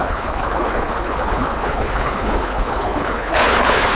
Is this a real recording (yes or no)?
no